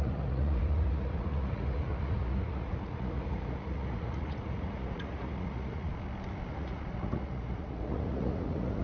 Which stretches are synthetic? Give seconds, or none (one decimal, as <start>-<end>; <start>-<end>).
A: 0.0-5.9; 6.5-8.8